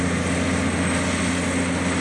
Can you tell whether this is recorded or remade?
recorded